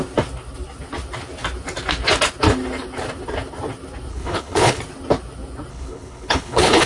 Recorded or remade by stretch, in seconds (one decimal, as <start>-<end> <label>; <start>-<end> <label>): 0.0-4.1 recorded; 4.1-4.8 remade; 4.8-5.7 recorded; 5.7-6.9 remade